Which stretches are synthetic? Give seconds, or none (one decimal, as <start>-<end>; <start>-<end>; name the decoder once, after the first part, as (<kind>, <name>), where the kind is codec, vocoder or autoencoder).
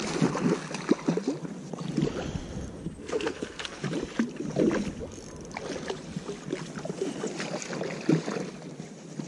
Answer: 3.0-3.8 (codec, SNAC)